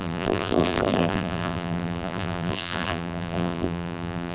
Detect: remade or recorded remade